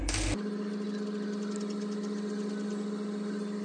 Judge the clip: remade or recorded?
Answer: recorded